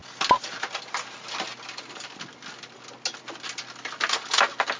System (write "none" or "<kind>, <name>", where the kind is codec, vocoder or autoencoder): none